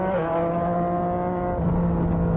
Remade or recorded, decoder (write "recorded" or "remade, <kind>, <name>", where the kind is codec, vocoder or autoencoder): recorded